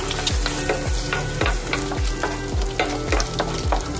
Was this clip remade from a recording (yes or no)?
no